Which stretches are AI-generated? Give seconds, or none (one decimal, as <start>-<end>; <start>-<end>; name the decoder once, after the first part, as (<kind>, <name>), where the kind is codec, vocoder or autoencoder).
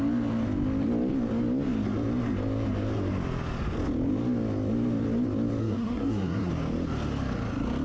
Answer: 5.6-6.5 (codec, SNAC)